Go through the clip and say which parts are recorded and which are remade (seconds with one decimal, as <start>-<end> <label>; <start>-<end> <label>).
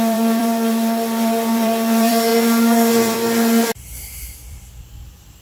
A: 0.0-2.3 remade; 2.3-2.9 recorded; 2.9-3.9 remade; 3.9-4.5 recorded; 4.5-5.4 remade